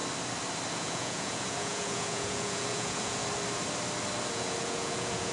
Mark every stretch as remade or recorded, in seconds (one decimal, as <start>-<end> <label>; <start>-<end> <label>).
0.0-0.7 recorded; 0.7-3.2 remade; 3.2-4.3 recorded; 4.3-5.3 remade